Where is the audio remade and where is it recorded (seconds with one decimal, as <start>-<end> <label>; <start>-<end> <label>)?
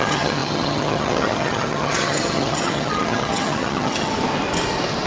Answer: 0.0-4.1 remade; 4.1-5.1 recorded